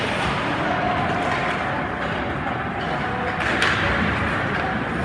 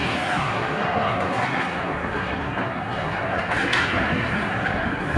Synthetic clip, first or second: second